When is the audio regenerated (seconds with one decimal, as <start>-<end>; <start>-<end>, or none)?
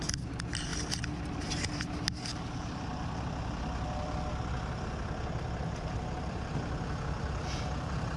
0.7-1.5